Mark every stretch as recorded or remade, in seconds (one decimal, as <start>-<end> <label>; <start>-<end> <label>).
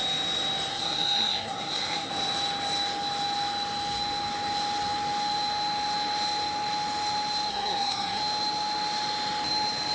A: 0.0-0.7 recorded; 0.7-2.1 remade; 2.1-7.5 recorded; 7.5-8.2 remade; 8.2-9.9 recorded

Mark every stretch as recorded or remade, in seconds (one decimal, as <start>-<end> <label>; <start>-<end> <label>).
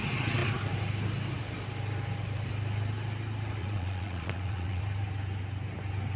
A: 0.0-3.6 recorded; 3.6-4.8 remade; 4.8-6.2 recorded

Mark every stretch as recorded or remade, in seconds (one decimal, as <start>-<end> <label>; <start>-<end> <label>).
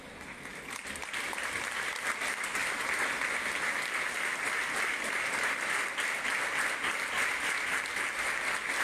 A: 0.0-2.6 remade; 2.6-5.3 recorded; 5.3-8.8 remade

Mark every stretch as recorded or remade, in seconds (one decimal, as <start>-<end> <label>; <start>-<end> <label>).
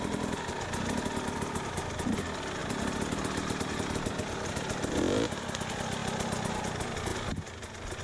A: 0.0-2.6 recorded; 2.6-4.5 remade; 4.5-8.0 recorded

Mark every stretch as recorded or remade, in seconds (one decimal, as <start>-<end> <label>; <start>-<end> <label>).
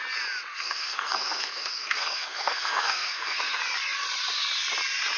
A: 0.0-0.5 recorded; 0.5-3.6 remade; 3.6-5.2 recorded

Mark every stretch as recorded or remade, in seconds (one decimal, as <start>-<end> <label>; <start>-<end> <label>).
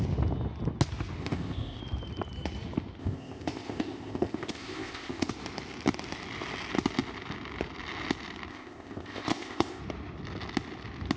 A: 0.0-1.2 recorded; 1.2-1.8 remade; 1.8-3.0 recorded; 3.0-5.3 remade; 5.3-8.5 recorded; 8.5-9.8 remade; 9.8-11.2 recorded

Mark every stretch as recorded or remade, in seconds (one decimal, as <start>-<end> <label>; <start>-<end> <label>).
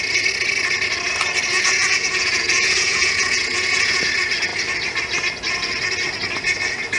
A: 0.0-1.5 recorded; 1.5-4.1 remade; 4.1-7.0 recorded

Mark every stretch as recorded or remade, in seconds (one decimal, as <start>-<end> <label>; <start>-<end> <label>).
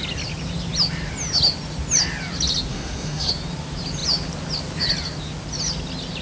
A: 0.0-2.7 recorded; 2.7-3.3 remade; 3.3-6.2 recorded